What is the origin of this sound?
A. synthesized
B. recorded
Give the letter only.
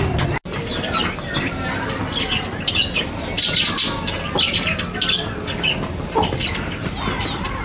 B